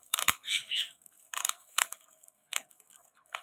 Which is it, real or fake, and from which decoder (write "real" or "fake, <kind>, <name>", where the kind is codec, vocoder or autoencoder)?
fake, codec, SNAC